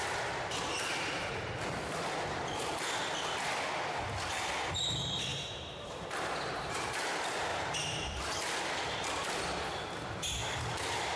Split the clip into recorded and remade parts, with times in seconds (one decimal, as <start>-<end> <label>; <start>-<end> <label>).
0.0-5.3 recorded; 5.3-7.0 remade; 7.0-7.5 recorded; 7.5-8.2 remade; 8.2-11.2 recorded